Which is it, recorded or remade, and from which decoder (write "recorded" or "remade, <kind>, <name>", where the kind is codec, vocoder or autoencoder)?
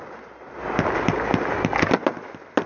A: recorded